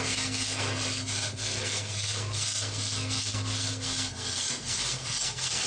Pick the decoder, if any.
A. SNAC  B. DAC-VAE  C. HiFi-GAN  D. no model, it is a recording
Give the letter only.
A